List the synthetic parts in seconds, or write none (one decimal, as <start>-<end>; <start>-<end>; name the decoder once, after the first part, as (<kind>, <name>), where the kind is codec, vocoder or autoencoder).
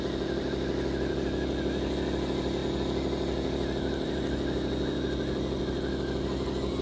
none